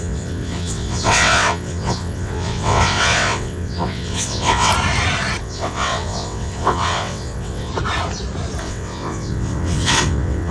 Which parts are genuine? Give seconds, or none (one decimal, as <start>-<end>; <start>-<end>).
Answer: 4.7-5.4; 7.7-8.6